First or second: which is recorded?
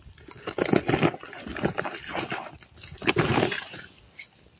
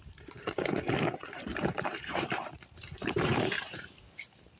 first